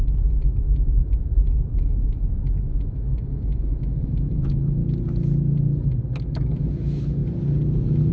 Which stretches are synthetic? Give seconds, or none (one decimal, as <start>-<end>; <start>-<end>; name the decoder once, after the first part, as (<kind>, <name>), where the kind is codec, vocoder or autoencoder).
0.0-4.8 (autoencoder, DAC-VAE); 6.2-7.2